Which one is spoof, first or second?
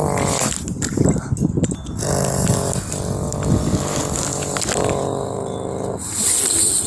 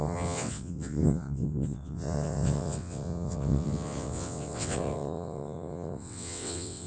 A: second